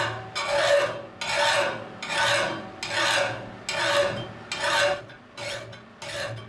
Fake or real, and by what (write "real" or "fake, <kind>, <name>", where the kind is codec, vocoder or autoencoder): real